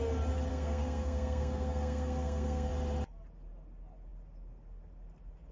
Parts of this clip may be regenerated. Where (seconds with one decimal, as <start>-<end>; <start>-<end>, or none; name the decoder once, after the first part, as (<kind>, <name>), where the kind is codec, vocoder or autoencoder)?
0.5-2.7 (codec, SNAC)